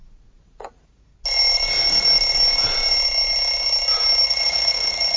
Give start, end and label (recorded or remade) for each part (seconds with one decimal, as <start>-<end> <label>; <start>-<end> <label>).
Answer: 0.0-1.1 remade; 1.1-4.2 recorded; 4.2-5.2 remade